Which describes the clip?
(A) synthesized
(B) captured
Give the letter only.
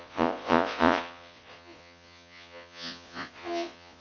A